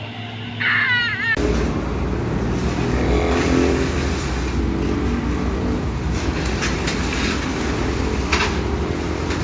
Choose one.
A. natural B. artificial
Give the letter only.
A